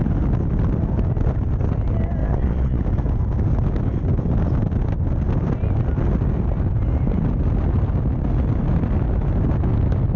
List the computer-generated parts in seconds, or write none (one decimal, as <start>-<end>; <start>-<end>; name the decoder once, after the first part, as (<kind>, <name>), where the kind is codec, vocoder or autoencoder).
2.2-2.8 (vocoder, Vocos)